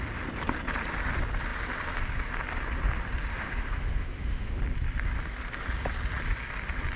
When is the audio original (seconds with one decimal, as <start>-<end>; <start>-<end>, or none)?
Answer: 0.0-3.3; 4.6-7.0